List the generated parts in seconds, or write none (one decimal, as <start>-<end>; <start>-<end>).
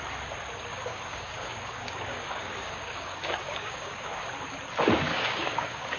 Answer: 0.7-4.3; 5.1-6.0